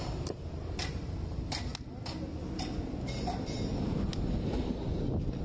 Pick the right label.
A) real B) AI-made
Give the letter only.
A